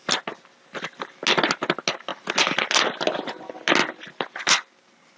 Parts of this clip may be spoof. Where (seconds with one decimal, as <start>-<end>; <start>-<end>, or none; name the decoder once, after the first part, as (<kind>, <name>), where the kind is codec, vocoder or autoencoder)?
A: none